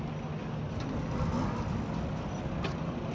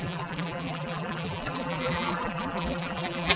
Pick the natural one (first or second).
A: first